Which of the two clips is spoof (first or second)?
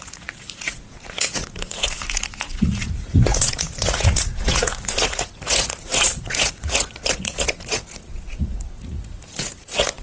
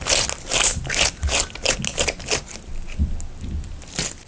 first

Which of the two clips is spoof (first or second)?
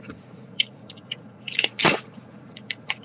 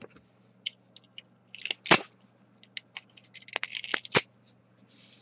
first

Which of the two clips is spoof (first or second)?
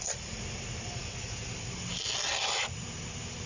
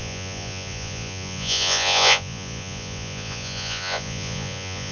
second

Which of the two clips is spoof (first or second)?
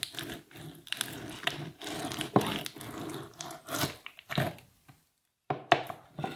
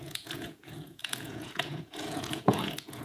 second